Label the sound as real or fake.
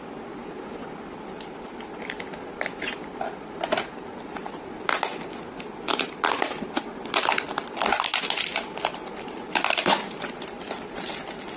real